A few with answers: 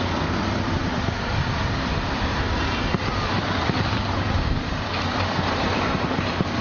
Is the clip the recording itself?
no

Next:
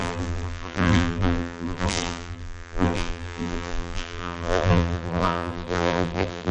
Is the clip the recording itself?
no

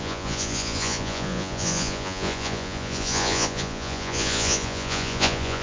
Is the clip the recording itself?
no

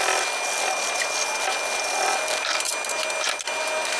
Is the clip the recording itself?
yes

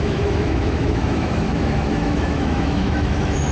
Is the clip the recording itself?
no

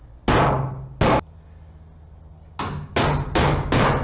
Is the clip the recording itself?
yes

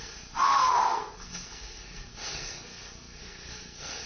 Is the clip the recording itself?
no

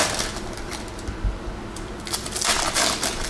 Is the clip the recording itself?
yes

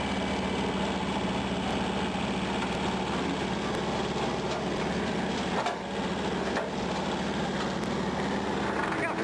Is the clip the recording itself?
yes